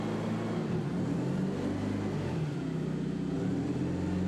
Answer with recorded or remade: recorded